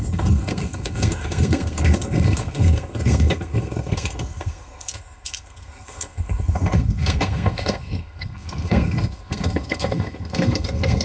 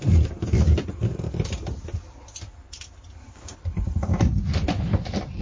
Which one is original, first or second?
second